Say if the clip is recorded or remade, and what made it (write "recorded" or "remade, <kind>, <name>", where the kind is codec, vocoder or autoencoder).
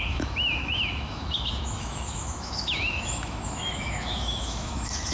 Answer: remade, autoencoder, DAC-VAE